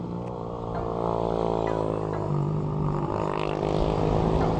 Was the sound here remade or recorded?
recorded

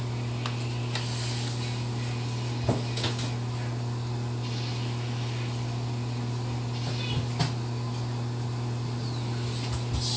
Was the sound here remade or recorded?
recorded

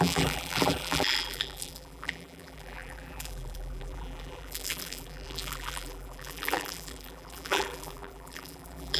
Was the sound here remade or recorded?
remade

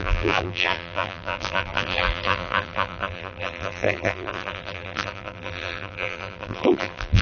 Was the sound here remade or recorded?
remade